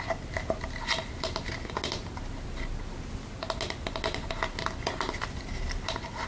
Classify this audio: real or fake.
real